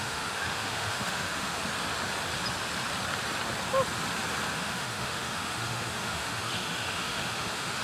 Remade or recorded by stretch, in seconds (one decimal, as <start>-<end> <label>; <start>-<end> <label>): 0.0-1.6 remade; 1.6-4.5 recorded; 4.5-7.8 remade